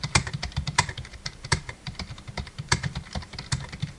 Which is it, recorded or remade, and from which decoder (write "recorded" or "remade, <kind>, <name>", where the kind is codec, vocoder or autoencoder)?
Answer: remade, vocoder, BigVGAN v2